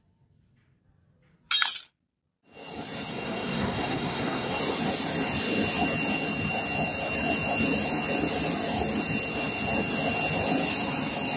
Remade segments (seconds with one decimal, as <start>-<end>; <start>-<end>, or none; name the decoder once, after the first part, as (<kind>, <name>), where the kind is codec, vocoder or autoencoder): 3.1-4.6 (codec, SNAC)